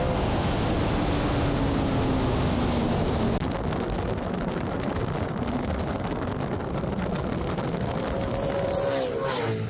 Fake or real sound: real